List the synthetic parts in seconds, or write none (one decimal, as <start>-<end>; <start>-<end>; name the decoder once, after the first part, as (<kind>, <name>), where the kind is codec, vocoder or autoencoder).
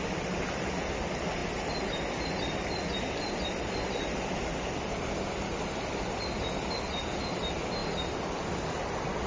none